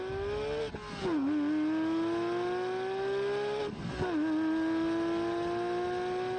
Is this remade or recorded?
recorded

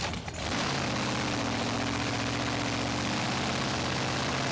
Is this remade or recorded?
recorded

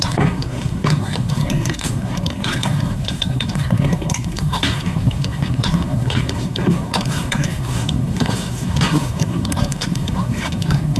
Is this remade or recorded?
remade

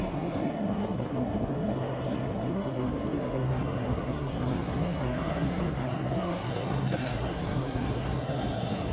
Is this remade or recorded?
remade